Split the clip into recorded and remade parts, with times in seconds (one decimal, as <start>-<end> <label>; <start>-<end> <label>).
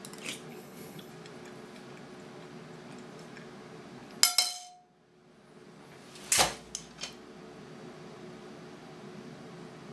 0.0-0.5 recorded; 0.5-1.1 remade; 1.1-9.9 recorded